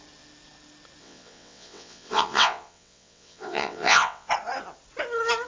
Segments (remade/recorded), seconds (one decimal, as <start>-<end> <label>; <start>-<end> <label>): 0.0-1.0 recorded; 1.0-4.3 remade; 4.3-5.5 recorded